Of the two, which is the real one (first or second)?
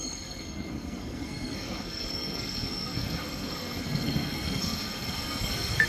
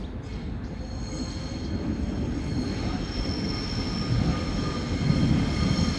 second